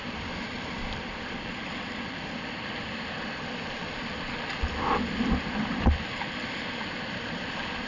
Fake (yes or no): yes